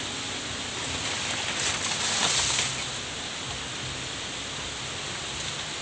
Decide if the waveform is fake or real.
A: real